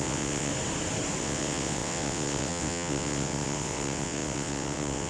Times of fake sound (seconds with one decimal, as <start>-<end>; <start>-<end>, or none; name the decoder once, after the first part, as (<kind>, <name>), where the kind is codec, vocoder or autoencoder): 0.0-0.5 (vocoder, WaveNeXt); 1.2-5.1